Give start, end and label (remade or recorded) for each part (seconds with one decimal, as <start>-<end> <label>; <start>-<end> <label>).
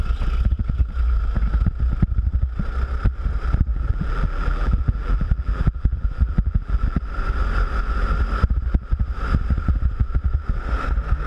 0.0-3.7 recorded; 3.7-7.0 remade; 7.0-11.3 recorded